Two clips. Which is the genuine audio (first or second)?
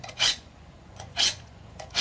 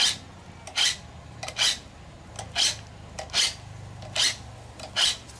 second